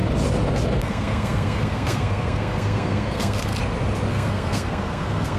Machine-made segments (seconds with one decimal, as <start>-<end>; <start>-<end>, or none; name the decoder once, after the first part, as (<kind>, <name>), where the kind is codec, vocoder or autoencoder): 0.8-3.5 (codec, SNAC); 4.1-5.4